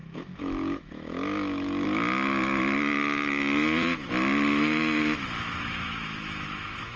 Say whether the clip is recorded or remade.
remade